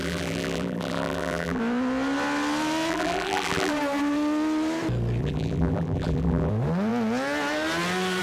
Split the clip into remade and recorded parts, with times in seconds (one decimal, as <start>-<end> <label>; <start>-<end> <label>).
0.0-1.6 remade; 1.6-2.9 recorded; 2.9-3.7 remade; 3.7-5.2 recorded; 5.2-6.5 remade; 6.5-8.2 recorded

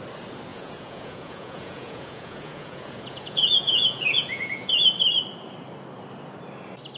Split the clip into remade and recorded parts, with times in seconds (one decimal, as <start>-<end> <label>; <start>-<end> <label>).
0.0-0.5 recorded; 0.5-4.7 remade; 4.7-7.0 recorded

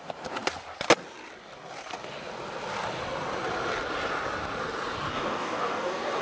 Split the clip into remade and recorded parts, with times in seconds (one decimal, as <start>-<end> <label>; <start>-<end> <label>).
0.0-5.1 recorded; 5.1-6.2 remade

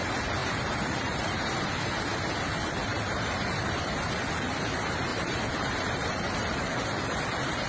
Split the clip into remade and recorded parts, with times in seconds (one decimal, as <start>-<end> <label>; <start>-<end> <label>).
0.0-0.4 recorded; 0.4-1.7 remade; 1.7-2.9 recorded; 2.9-4.0 remade; 4.0-5.1 recorded; 5.1-7.2 remade; 7.2-7.7 recorded

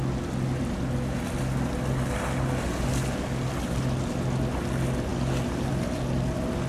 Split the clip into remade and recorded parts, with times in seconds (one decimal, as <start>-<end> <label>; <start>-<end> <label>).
0.0-6.7 recorded

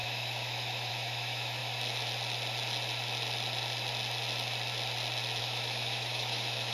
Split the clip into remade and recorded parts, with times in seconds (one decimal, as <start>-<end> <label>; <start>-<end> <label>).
0.0-1.6 remade; 1.6-5.4 recorded; 5.4-6.7 remade